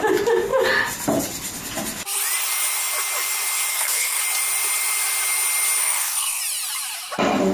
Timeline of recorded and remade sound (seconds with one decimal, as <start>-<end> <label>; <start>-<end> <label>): 0.0-3.7 recorded; 3.7-4.2 remade; 4.2-5.8 recorded; 5.8-6.4 remade; 6.4-7.5 recorded